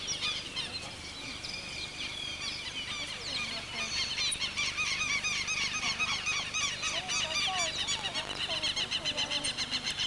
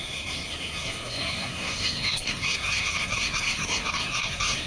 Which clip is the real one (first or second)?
first